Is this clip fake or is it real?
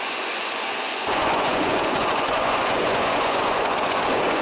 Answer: fake